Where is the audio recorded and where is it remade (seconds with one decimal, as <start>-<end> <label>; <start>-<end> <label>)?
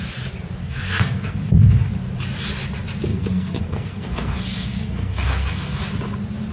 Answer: 0.0-0.6 recorded; 0.6-1.9 remade; 1.9-3.1 recorded; 3.1-5.8 remade; 5.8-6.5 recorded